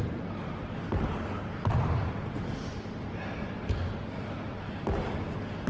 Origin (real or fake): real